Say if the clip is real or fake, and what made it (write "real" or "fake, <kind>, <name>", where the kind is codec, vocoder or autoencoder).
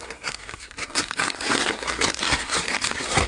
fake, codec, SNAC